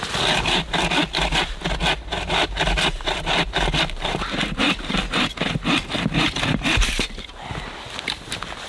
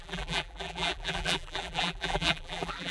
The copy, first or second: second